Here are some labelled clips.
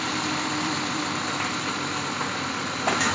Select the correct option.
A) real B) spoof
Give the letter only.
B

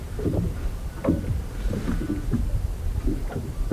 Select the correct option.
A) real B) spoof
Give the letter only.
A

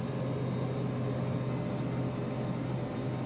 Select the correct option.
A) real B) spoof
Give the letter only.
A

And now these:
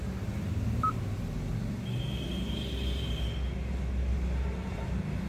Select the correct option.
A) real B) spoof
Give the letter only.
A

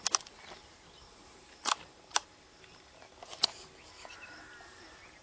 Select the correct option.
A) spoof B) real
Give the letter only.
B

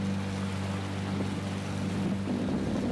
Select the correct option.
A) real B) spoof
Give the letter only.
A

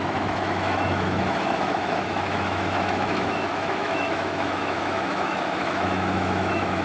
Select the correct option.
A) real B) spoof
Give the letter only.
B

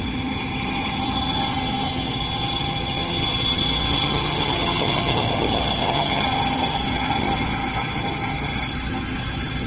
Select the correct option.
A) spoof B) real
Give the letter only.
A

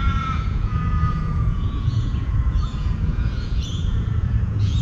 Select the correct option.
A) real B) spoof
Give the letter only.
B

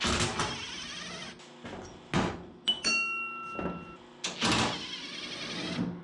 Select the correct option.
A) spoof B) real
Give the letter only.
B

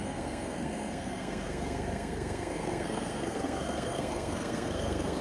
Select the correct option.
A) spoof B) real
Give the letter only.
A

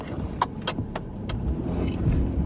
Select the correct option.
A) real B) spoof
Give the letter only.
A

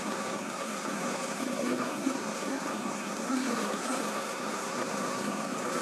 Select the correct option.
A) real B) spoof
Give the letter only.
B